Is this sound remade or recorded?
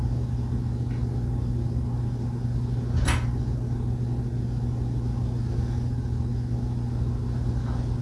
recorded